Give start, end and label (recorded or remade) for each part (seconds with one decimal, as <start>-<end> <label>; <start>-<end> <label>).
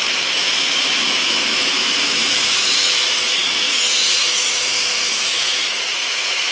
0.0-6.5 remade